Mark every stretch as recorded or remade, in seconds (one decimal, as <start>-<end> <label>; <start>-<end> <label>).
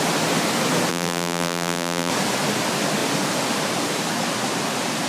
0.0-0.9 recorded; 0.9-2.1 remade; 2.1-5.1 recorded